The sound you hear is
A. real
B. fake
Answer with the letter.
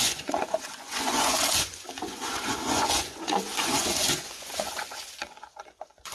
B